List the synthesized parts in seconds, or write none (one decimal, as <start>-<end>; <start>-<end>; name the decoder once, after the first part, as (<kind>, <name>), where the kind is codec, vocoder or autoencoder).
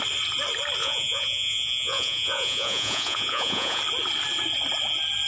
0.8-3.8 (vocoder, Vocos)